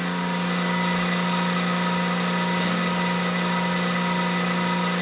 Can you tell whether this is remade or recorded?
recorded